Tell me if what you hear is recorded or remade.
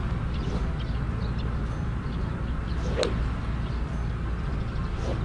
recorded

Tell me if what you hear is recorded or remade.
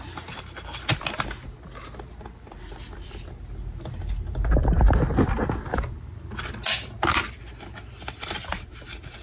recorded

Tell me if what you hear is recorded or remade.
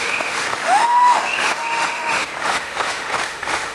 remade